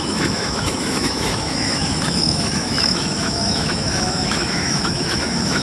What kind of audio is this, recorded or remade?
remade